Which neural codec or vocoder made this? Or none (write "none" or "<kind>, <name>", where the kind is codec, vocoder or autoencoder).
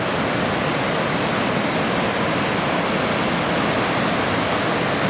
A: none